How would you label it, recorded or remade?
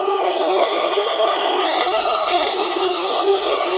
remade